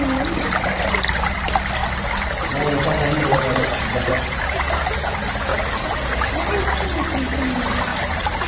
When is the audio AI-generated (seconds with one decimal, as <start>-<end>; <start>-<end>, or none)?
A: none